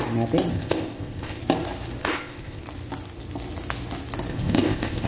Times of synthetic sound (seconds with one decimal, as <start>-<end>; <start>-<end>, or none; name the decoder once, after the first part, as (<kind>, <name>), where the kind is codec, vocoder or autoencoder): 0.5-1.4 (codec, ZipCodec); 2.0-2.6; 4.3-5.1